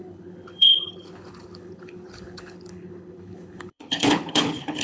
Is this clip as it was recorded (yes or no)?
no